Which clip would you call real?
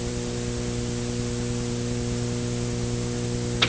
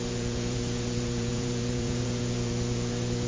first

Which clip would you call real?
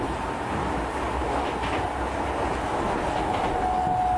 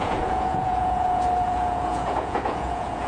first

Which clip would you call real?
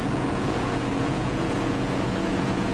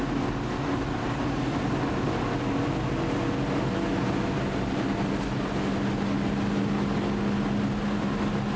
second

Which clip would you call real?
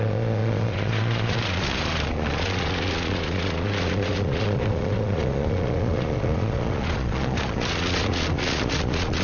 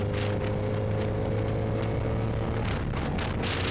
second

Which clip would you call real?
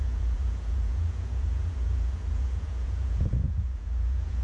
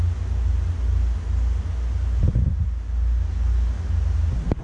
second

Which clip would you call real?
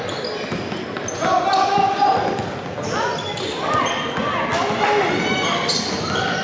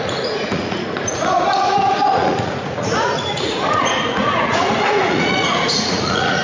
first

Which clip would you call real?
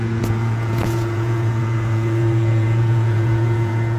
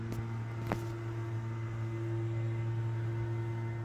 second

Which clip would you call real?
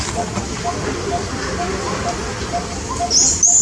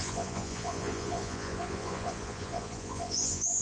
first